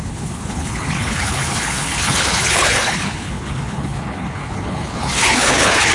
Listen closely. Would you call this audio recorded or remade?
remade